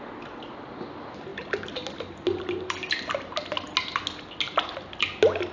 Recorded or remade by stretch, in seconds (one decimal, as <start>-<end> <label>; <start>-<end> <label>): 0.0-5.5 recorded